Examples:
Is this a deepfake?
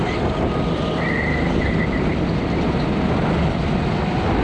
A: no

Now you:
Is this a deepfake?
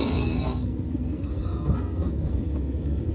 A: yes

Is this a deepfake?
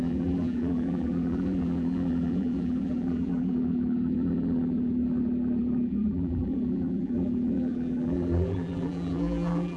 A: yes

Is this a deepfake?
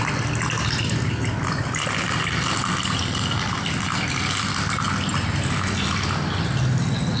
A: no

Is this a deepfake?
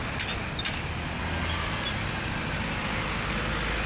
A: no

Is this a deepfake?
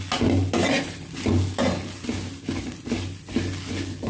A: no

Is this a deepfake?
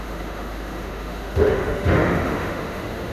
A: yes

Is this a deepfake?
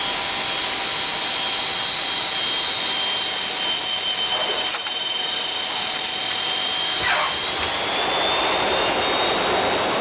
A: no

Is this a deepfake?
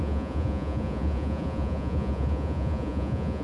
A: yes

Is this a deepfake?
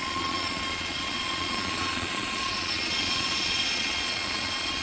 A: yes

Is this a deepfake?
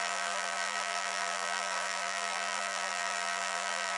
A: yes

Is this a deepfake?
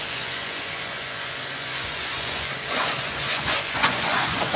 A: yes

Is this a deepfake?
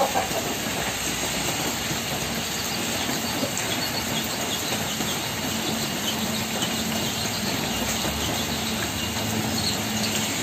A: no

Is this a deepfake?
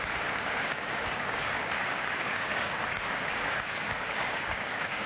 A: yes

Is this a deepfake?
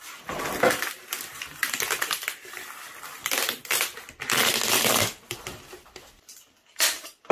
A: yes